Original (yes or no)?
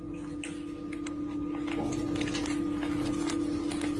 yes